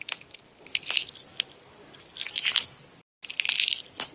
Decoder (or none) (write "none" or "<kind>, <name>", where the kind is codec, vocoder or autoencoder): none